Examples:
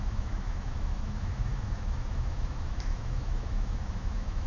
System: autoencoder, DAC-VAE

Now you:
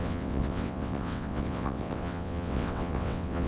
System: vocoder, WaveNeXt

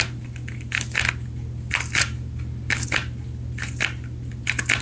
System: none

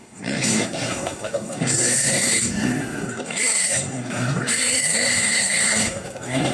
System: codec, SNAC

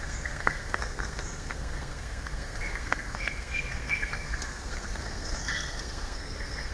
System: codec, SNAC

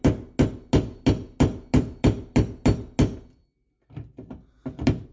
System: none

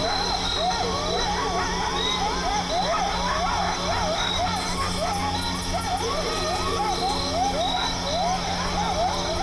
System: none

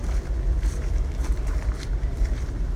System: vocoder, BigVGAN v2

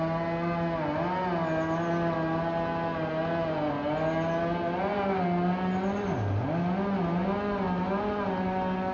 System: none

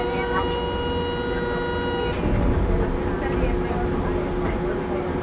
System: none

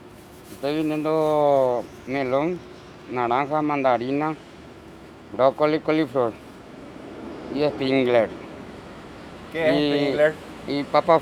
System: autoencoder, DAC-VAE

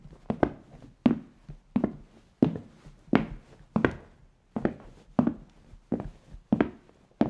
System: none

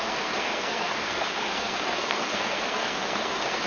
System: codec, SNAC